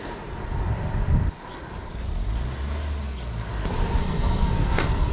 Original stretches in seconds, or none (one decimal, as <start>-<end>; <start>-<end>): 0.0-4.0